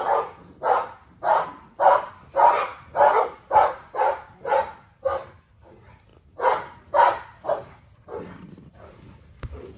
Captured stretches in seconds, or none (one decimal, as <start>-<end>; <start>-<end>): 2.7-3.4; 6.1-6.8